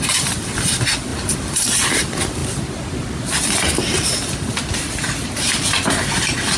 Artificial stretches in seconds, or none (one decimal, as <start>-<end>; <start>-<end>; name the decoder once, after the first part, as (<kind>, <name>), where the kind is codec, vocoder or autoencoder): none